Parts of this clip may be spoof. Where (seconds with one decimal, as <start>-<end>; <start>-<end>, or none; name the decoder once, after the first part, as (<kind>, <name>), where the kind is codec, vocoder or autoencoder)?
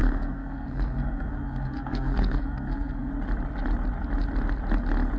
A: 0.0-3.1 (codec, SNAC)